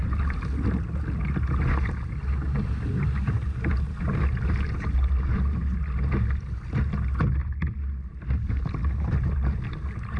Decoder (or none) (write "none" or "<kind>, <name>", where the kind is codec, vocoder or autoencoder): none